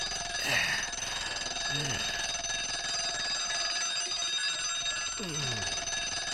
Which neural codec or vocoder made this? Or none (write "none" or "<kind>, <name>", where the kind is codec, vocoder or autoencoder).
none